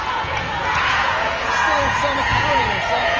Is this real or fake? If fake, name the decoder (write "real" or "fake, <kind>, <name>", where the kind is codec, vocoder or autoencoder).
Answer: fake, vocoder, Vocos